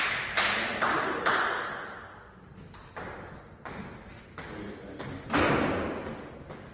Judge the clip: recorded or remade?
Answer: recorded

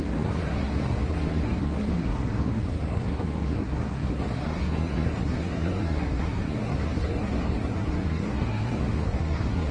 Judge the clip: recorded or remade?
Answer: remade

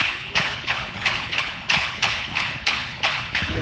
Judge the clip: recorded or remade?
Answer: remade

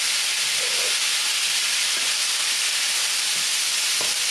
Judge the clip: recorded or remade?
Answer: recorded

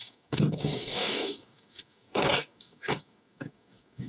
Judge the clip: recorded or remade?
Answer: remade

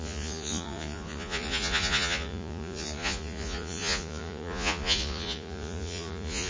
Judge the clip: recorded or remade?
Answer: remade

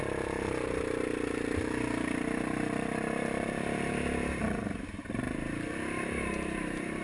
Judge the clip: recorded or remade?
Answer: remade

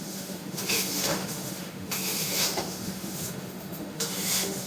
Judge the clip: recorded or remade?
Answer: remade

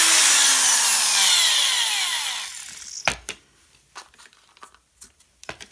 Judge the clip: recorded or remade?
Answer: recorded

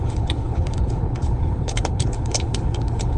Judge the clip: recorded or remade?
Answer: remade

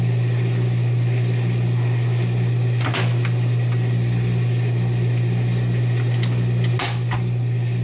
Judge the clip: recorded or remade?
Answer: recorded